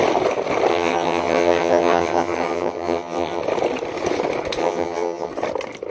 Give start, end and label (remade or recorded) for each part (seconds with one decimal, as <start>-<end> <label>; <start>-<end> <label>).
0.0-0.7 recorded; 0.7-3.4 remade; 3.4-4.6 recorded; 4.6-5.3 remade; 5.3-5.9 recorded